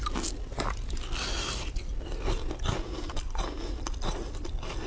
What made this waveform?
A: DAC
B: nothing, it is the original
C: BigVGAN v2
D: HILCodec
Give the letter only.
B